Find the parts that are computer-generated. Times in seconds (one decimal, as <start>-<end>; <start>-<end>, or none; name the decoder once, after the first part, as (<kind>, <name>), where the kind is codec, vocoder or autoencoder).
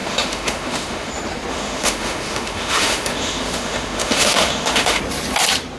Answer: 0.0-1.1 (autoencoder, DAC-VAE); 1.5-5.0